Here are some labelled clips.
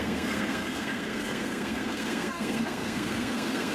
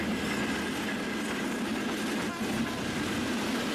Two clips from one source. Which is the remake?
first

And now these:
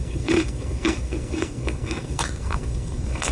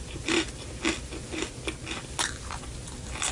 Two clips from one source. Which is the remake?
first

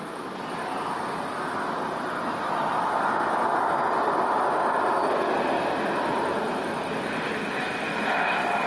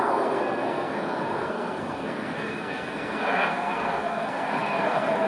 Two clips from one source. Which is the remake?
second